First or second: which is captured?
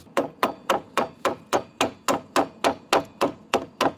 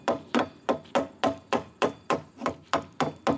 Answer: second